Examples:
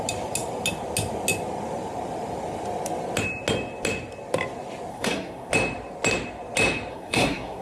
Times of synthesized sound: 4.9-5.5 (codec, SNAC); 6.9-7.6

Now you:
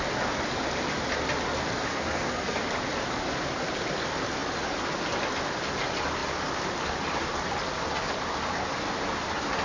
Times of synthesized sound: 1.9-2.6 (codec, SNAC)

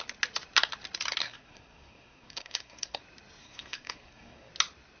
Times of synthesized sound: 1.2-3.0 (codec, SNAC); 3.4-4.5

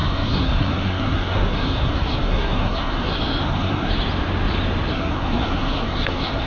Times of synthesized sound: 0.0-3.9 (codec, SNAC); 4.9-6.5

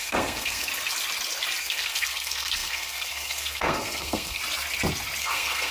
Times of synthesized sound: 0.0-0.7 (codec, SNAC); 1.6-4.4; 5.2-5.7

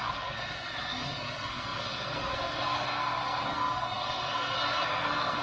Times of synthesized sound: 0.0-5.4 (codec, SNAC)

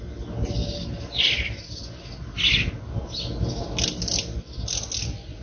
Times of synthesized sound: none